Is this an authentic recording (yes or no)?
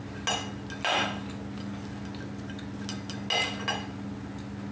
yes